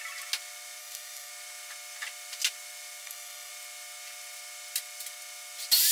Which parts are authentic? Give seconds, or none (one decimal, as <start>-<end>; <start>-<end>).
0.0-0.8; 1.3-3.0; 3.5-5.9